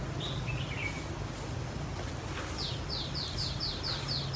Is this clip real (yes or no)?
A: yes